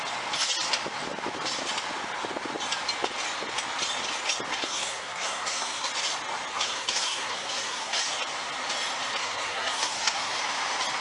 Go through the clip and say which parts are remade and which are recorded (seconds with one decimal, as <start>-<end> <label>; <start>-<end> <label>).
0.0-4.5 recorded; 4.5-5.9 remade; 5.9-6.5 recorded; 6.5-8.0 remade; 8.0-9.2 recorded; 9.2-10.4 remade; 10.4-11.0 recorded